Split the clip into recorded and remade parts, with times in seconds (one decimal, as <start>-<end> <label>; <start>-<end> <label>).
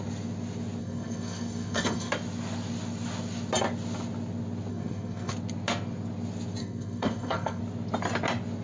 0.0-0.8 recorded; 0.8-2.1 remade; 2.1-4.7 recorded; 4.7-5.3 remade; 5.3-6.6 recorded; 6.6-7.6 remade; 7.6-8.6 recorded